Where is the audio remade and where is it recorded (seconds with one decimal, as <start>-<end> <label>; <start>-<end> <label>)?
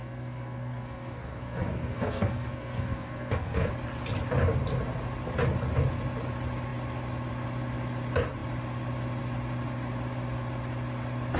0.0-3.7 remade; 3.7-11.4 recorded